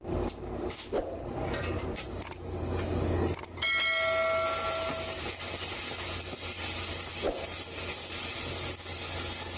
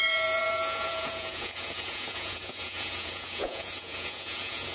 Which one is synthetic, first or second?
second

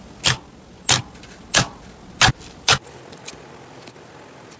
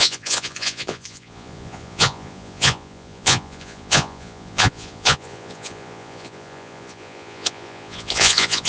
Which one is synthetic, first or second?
second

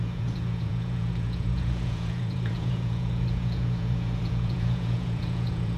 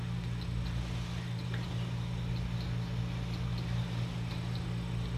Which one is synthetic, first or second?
first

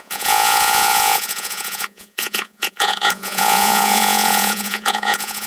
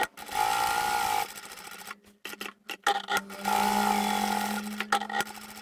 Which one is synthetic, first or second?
first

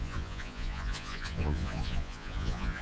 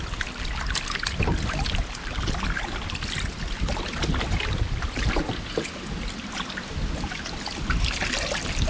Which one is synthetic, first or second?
first